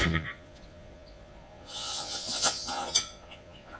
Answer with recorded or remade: remade